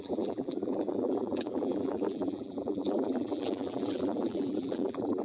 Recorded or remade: remade